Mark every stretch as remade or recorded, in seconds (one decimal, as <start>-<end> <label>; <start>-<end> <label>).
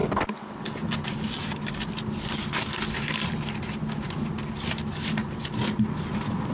0.0-6.5 recorded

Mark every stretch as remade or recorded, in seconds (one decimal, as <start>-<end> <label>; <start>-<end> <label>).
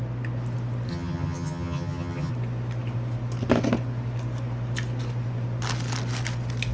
0.0-0.9 recorded; 0.9-2.3 remade; 2.3-6.7 recorded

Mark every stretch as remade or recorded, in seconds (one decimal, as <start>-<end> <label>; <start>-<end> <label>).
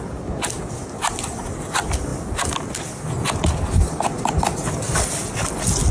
0.0-5.9 recorded